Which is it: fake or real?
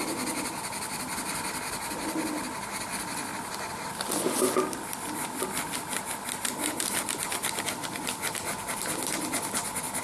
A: real